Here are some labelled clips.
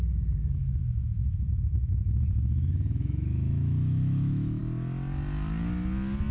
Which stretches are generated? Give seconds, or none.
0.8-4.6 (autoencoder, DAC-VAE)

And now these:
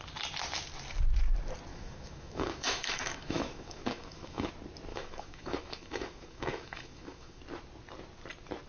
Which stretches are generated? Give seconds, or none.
1.7-4.5 (autoencoder, DAC-VAE); 4.9-7.4

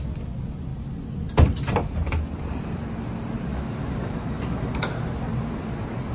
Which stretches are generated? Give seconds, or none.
3.5-4.7 (autoencoder, DAC-VAE)

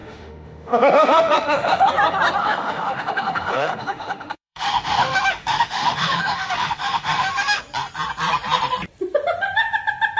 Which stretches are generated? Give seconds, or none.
0.0-1.9 (autoencoder, DAC-VAE); 2.4-7.6

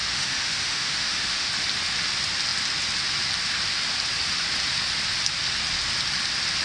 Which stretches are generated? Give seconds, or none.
0.0-1.5 (autoencoder, DAC-VAE)

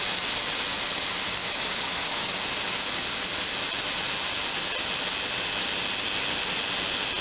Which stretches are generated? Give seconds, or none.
1.4-2.3 (autoencoder, DAC-VAE)

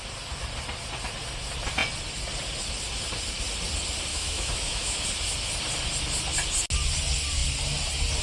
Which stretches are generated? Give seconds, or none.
4.1-5.0 (autoencoder, DAC-VAE)